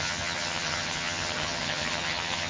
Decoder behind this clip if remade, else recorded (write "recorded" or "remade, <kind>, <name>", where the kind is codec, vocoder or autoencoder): remade, vocoder, HiFi-GAN